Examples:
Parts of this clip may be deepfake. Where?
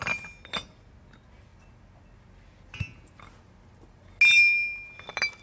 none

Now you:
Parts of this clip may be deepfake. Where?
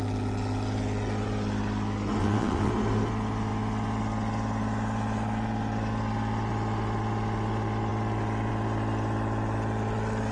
2.2-2.7 (vocoder, WaveNeXt)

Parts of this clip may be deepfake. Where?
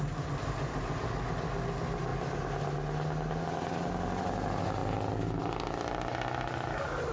none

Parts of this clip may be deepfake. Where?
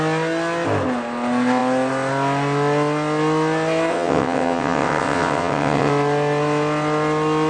3.9-5.9 (vocoder, WaveNeXt)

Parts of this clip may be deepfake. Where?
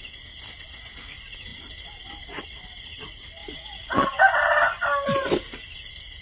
3.4-4.2 (vocoder, WaveNeXt)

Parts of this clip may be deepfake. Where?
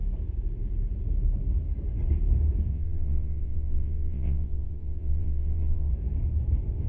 2.7-5.9 (vocoder, WaveNeXt)